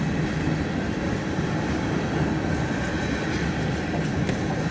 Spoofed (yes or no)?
no